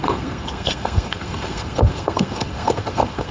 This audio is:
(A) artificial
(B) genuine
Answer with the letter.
A